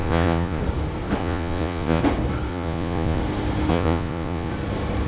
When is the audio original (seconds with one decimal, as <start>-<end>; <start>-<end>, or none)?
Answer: 0.6-1.2; 2.0-2.5; 3.2-3.7; 4.5-5.1